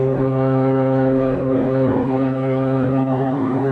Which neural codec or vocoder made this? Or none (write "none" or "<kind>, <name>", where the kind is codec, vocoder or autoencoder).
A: codec, SNAC